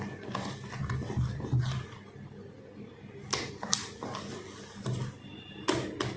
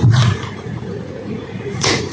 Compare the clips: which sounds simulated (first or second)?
second